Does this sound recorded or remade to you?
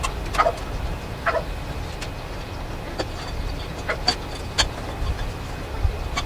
recorded